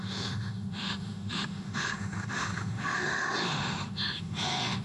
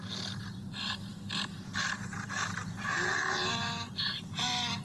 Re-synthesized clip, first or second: first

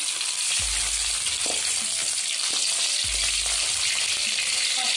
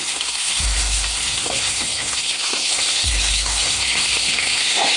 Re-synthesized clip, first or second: second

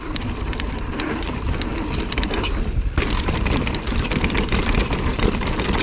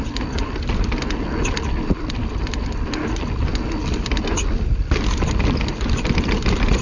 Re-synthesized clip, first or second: first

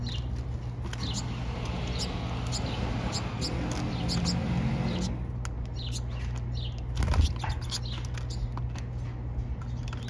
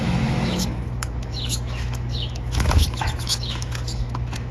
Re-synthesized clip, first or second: second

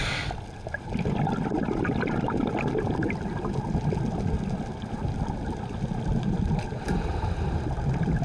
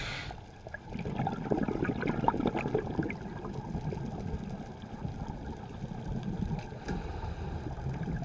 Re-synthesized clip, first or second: first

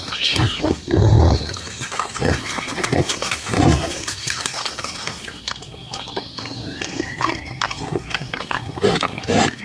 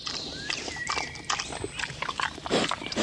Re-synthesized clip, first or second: first